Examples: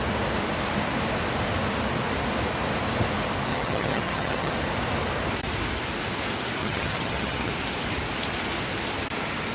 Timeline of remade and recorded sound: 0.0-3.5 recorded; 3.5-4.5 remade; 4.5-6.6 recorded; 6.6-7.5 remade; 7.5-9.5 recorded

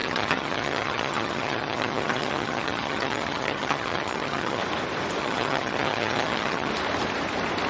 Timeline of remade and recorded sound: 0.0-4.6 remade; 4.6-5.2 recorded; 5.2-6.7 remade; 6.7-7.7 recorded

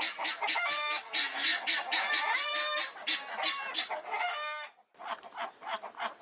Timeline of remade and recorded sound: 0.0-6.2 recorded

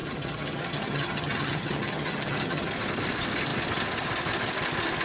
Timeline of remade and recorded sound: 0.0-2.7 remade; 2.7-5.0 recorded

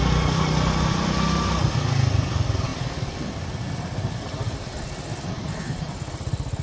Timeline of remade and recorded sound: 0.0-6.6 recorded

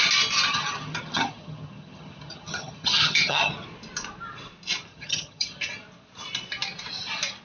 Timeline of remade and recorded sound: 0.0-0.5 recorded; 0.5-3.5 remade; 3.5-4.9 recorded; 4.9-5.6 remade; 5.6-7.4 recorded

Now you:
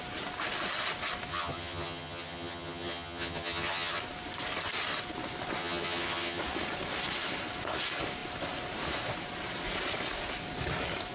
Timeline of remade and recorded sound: 0.0-1.3 recorded; 1.3-4.0 remade; 4.0-5.6 recorded; 5.6-6.4 remade; 6.4-11.1 recorded

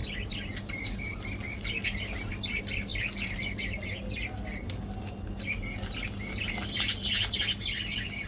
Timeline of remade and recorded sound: 0.0-8.3 recorded